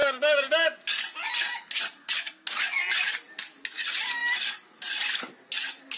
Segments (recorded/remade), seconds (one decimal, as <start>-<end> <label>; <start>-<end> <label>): 0.0-6.0 recorded